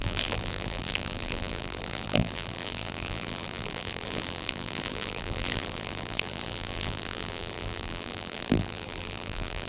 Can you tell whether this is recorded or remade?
remade